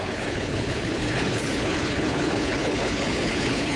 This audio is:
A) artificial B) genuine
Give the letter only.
A